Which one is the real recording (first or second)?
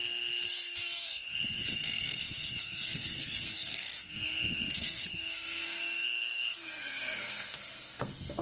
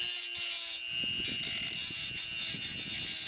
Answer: second